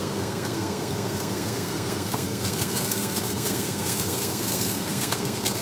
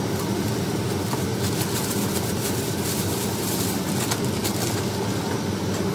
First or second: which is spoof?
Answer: first